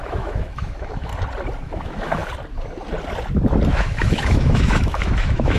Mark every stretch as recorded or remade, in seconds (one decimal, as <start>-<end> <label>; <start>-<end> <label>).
0.0-1.1 remade; 1.1-1.6 recorded; 1.6-2.2 remade; 2.2-3.7 recorded; 3.7-5.6 remade